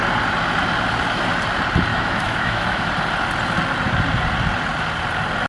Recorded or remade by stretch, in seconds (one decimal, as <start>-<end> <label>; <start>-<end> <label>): 0.0-1.9 recorded; 1.9-2.9 remade; 2.9-5.5 recorded